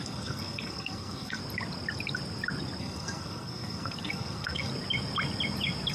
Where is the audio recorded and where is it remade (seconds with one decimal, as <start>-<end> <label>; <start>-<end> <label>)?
0.0-1.4 remade; 1.4-2.8 recorded; 2.8-4.7 remade; 4.7-5.9 recorded